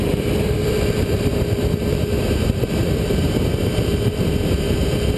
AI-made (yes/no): yes